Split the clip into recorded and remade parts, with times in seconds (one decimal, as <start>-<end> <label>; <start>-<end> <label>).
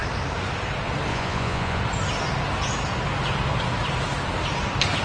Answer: 0.0-1.1 recorded; 1.1-1.8 remade; 1.8-5.0 recorded